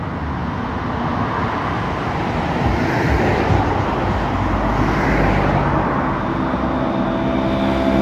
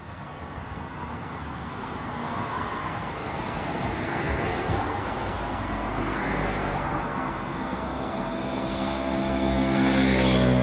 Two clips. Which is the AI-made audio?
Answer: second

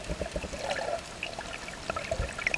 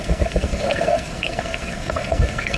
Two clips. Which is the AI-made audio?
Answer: second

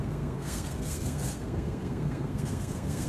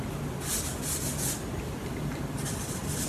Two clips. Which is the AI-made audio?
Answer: first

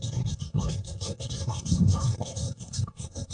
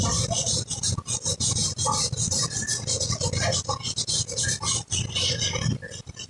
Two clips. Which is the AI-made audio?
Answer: first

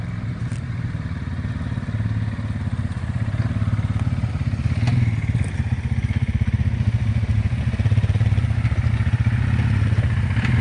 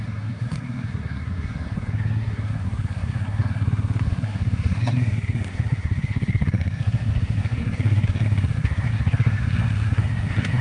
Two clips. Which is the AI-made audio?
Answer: second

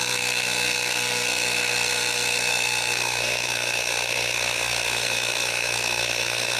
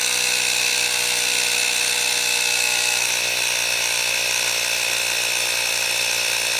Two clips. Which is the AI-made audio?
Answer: first